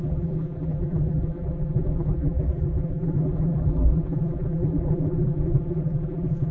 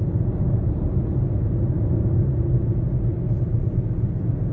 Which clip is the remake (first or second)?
first